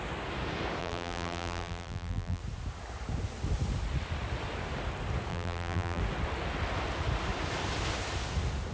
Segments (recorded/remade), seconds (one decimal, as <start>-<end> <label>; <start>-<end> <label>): 0.0-0.8 recorded; 0.8-2.4 remade; 2.4-5.3 recorded; 5.3-6.0 remade; 6.0-8.7 recorded